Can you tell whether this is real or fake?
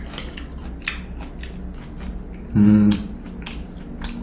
real